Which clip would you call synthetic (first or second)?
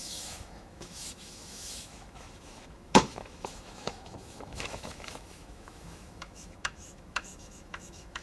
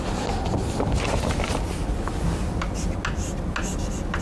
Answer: first